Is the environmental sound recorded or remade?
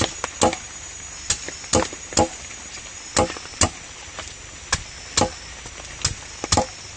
recorded